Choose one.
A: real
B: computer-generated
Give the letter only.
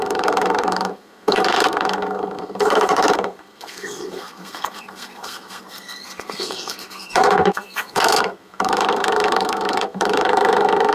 B